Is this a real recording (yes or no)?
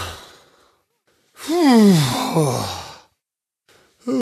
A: yes